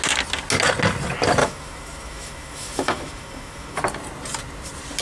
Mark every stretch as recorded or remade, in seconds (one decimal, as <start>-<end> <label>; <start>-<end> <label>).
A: 0.0-1.4 recorded; 1.4-3.8 remade; 3.8-5.0 recorded